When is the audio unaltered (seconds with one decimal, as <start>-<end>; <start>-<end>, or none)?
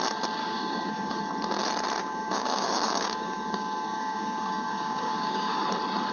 0.0-0.4; 1.2-2.0; 5.6-6.1